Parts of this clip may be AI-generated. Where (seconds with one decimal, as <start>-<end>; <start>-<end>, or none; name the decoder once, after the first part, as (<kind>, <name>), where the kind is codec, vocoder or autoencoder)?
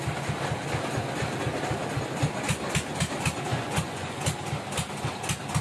3.5-4.2 (vocoder, Vocos)